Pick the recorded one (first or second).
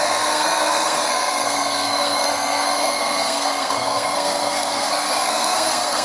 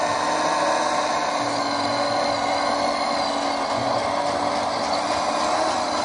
second